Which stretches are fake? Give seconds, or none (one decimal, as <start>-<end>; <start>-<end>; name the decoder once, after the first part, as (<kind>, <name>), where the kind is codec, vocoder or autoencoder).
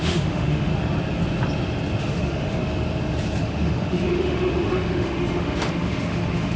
0.0-0.7 (autoencoder, DAC-VAE); 2.0-2.6; 3.4-6.6